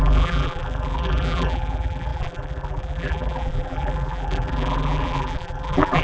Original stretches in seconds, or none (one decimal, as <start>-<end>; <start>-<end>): none